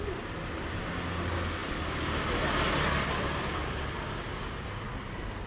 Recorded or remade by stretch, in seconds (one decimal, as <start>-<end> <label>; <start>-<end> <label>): 0.0-1.6 recorded; 1.6-4.0 remade; 4.0-5.5 recorded